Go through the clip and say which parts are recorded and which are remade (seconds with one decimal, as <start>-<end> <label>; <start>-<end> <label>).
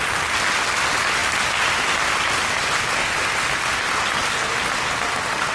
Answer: 0.0-5.5 recorded